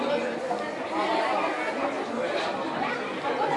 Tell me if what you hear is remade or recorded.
recorded